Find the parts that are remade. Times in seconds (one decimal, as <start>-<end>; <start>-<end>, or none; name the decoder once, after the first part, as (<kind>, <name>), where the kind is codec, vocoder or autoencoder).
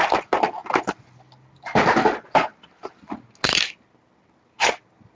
none